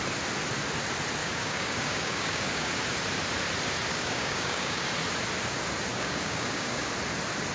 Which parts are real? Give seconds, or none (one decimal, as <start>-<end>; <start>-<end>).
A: 0.0-1.2; 2.7-3.9; 4.8-5.9; 6.9-7.5